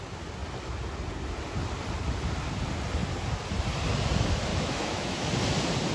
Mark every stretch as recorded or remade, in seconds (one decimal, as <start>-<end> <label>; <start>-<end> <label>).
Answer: 0.0-4.5 recorded; 4.5-5.3 remade; 5.3-5.9 recorded